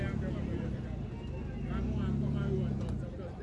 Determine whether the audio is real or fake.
real